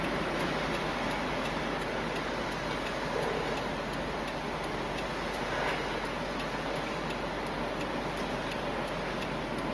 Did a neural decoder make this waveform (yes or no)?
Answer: no